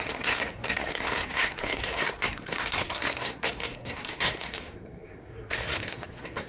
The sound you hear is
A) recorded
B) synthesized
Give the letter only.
B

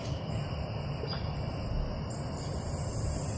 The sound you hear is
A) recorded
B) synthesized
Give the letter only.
A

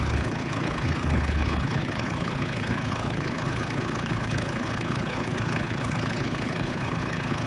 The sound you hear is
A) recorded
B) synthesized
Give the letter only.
B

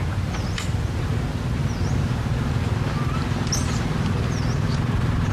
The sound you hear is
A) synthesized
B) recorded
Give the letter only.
B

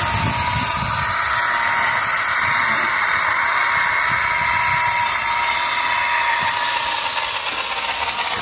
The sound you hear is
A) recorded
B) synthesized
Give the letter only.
A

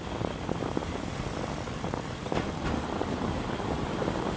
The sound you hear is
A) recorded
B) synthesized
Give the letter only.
A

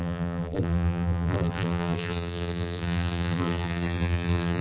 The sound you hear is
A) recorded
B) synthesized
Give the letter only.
B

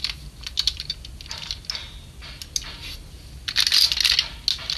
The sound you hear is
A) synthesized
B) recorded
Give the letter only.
B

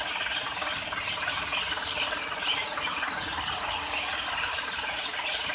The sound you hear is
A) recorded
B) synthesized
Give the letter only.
B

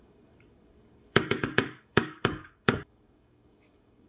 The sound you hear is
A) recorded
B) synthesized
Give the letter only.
B